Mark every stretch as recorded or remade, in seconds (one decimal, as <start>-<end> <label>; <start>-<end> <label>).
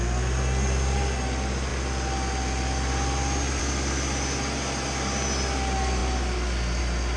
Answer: 0.0-7.2 recorded